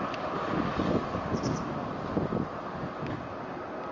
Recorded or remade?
recorded